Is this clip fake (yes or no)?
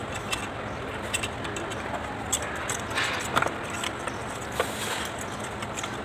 no